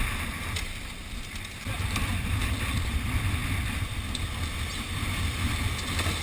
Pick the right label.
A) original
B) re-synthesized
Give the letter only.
A